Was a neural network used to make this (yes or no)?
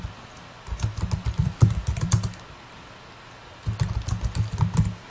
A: no